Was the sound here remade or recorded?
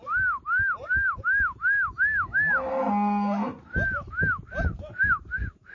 recorded